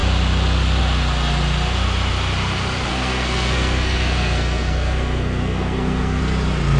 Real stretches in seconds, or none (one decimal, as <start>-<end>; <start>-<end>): 0.0-2.9; 6.2-6.8